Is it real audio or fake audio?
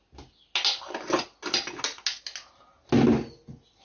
real